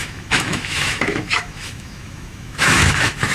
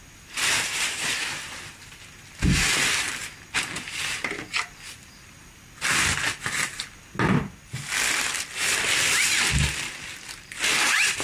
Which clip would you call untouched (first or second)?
second